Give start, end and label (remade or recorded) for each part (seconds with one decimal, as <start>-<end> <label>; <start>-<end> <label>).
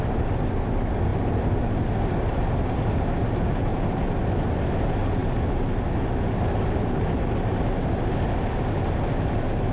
0.0-9.7 recorded